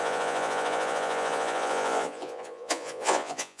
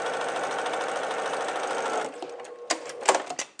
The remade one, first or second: first